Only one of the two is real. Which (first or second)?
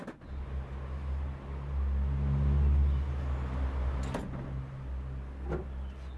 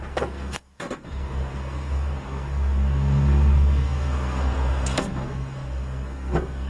first